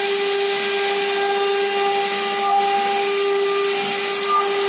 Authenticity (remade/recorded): recorded